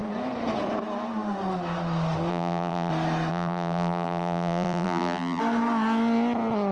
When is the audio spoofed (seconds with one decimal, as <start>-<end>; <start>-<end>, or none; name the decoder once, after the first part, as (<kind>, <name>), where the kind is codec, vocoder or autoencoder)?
2.3-2.9 (vocoder, BigVGAN v2); 3.3-5.4